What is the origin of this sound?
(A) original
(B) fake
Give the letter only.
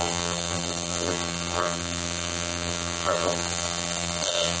B